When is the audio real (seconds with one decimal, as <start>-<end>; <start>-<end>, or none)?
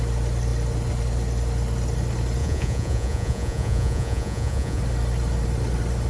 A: 0.0-2.4; 4.8-6.1